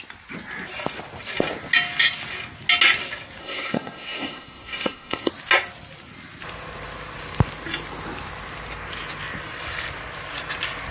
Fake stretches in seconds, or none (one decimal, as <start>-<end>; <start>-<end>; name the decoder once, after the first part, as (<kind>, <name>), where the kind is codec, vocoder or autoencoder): 3.4-5.3 (codec, SNAC)